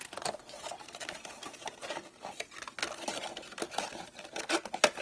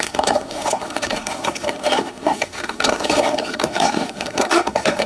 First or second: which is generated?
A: second